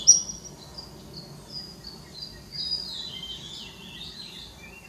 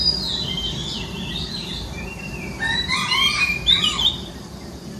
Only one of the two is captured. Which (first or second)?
first